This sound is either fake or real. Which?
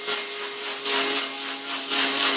real